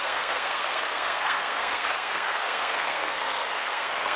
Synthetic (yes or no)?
yes